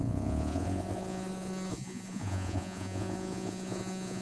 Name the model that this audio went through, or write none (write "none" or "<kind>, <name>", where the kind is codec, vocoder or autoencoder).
vocoder, Vocos